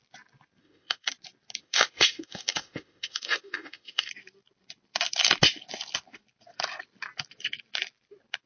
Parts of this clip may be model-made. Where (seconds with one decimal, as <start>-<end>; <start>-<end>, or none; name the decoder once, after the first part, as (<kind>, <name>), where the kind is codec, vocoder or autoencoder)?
0.6-1.1 (autoencoder, DAC-VAE); 1.6-4.1